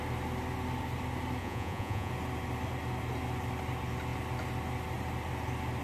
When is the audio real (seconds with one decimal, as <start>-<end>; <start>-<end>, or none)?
0.0-1.4; 2.1-5.8